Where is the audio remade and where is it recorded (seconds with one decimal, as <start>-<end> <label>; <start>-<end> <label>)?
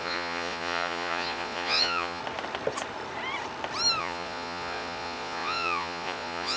0.0-2.2 remade; 2.2-4.0 recorded; 4.0-6.6 remade